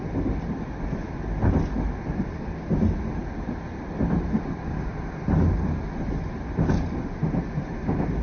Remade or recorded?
recorded